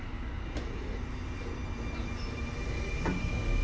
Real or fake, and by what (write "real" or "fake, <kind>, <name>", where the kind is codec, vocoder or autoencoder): real